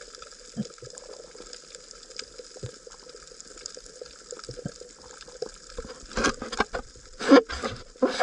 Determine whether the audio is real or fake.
real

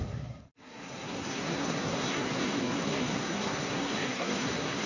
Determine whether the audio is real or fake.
fake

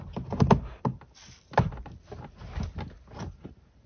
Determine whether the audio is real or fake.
real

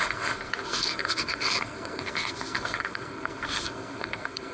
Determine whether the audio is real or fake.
fake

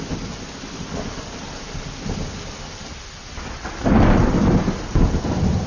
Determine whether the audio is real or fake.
real